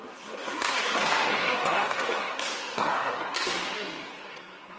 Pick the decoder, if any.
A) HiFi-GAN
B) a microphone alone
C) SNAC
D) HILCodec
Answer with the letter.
C